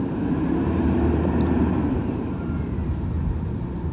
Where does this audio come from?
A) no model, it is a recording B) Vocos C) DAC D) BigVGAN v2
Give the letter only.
D